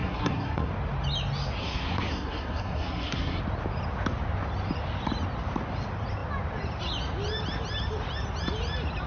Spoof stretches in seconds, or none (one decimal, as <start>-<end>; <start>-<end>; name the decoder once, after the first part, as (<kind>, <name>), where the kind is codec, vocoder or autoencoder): 0.0-0.7 (codec, SNAC); 1.6-3.4